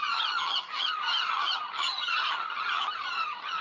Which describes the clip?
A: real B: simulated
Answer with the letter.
B